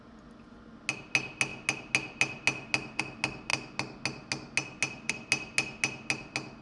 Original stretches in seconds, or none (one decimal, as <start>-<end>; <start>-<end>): 0.0-6.6